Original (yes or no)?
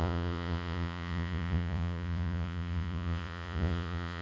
no